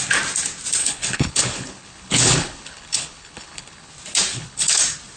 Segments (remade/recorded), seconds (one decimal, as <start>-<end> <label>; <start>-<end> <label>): 0.0-0.8 recorded; 0.8-3.9 remade; 3.9-4.3 recorded; 4.3-4.8 remade; 4.8-5.2 recorded